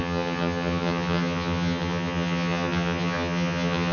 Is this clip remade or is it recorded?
remade